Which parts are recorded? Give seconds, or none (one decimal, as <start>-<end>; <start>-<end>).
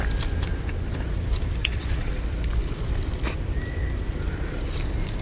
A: 0.0-1.6; 2.1-5.2